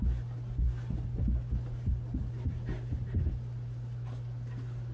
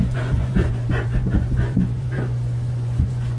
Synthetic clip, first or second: second